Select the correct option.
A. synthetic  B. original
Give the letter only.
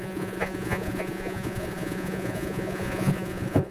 A